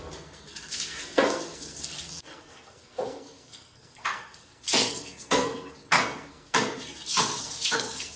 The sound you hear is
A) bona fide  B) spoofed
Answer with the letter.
B